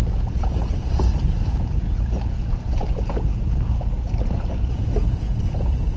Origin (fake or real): fake